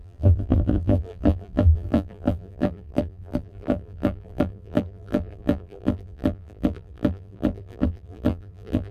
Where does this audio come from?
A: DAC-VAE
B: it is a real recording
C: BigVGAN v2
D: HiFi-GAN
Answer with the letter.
C